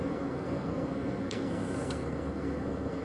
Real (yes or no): no